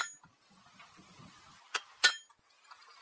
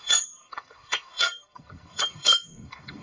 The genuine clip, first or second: first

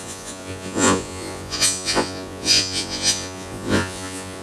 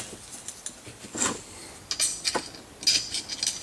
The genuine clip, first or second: second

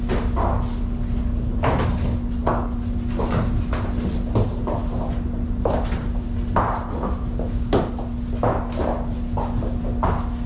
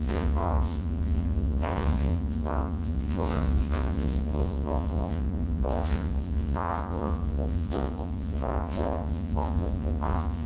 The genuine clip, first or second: first